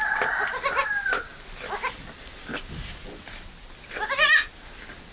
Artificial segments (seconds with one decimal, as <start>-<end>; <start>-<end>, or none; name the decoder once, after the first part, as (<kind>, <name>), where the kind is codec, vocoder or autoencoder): none